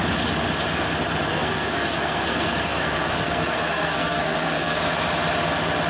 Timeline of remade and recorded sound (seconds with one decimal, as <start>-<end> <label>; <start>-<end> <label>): 0.0-1.3 recorded; 1.3-4.8 remade; 4.8-5.9 recorded